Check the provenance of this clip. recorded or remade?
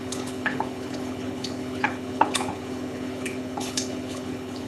remade